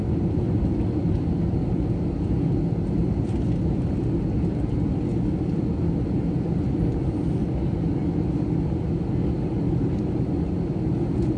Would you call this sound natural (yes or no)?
yes